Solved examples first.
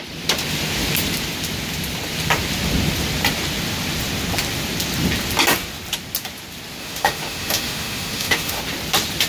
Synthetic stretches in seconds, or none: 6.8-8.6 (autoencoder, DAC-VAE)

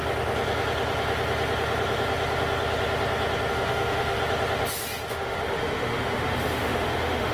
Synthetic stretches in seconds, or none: 3.5-4.2 (autoencoder, DAC-VAE); 5.1-7.3

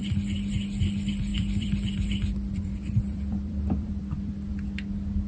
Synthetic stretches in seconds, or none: 1.3-4.5 (vocoder, BigVGAN v2)

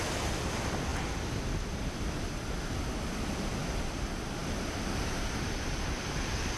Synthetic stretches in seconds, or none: none

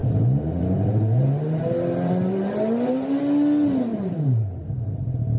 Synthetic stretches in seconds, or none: 0.0-3.2 (vocoder, BigVGAN v2); 3.9-5.0